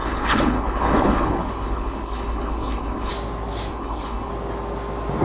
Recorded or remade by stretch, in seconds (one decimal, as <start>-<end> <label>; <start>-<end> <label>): 0.0-3.1 remade; 3.1-3.7 recorded; 3.7-4.3 remade; 4.3-5.2 recorded